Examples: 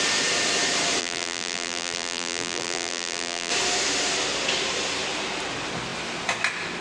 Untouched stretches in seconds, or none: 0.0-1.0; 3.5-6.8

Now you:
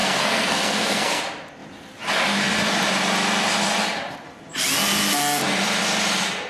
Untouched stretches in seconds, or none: 1.2-6.5